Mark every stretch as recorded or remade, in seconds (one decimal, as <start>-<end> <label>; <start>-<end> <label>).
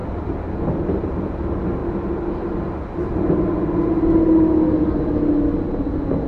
0.0-6.3 recorded